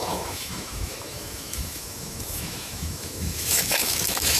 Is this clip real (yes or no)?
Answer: no